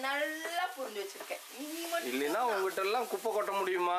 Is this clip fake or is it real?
real